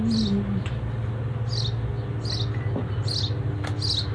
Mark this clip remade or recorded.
recorded